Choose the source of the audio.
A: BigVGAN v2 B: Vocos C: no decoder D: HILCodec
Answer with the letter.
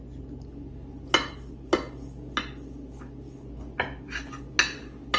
C